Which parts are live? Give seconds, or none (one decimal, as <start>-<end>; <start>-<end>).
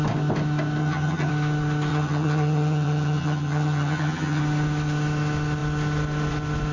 0.0-0.8; 1.3-1.9; 4.4-6.7